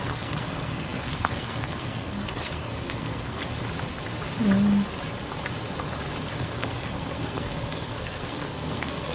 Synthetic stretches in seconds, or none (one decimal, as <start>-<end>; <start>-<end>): 0.0-3.4; 6.3-9.1